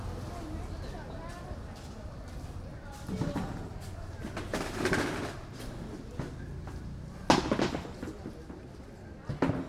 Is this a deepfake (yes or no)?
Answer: no